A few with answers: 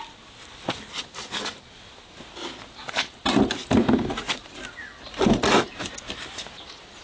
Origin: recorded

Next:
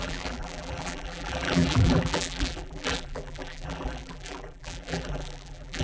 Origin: remade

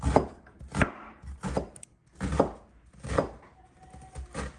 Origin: recorded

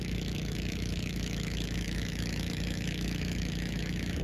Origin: remade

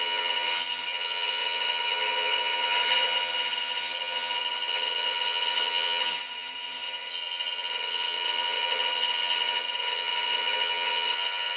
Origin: remade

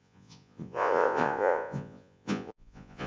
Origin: remade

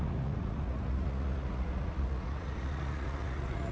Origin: remade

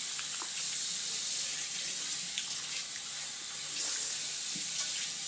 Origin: recorded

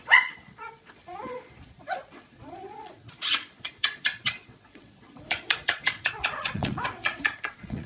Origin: remade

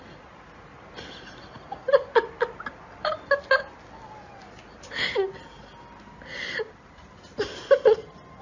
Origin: recorded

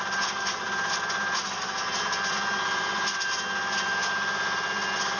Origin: recorded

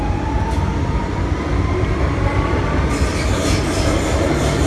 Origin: recorded